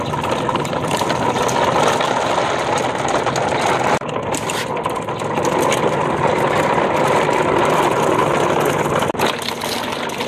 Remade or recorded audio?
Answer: recorded